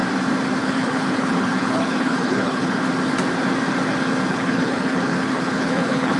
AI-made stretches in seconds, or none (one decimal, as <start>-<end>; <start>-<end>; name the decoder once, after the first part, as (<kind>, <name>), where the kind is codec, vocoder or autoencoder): 0.6-2.8 (codec, HILCodec); 4.3-6.2